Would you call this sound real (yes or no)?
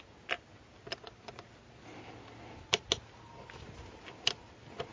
yes